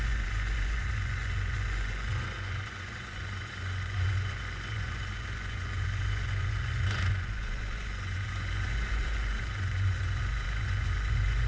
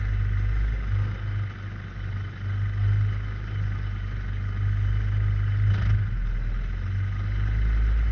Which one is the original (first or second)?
second